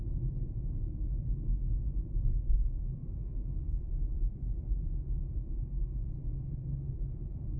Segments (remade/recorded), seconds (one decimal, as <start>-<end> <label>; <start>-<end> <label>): 0.0-7.6 recorded